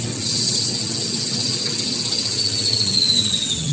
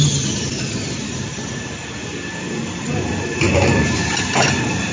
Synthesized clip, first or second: first